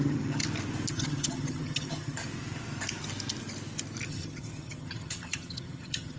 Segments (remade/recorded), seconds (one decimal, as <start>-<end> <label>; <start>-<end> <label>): 0.0-0.4 remade; 0.4-0.9 recorded; 0.9-2.2 remade; 2.2-4.1 recorded; 4.1-6.2 remade